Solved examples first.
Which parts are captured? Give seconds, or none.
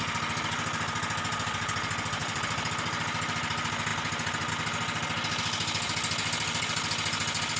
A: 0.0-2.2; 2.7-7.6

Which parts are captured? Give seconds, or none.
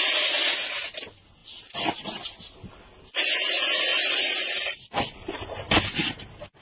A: 0.0-3.9; 5.3-6.6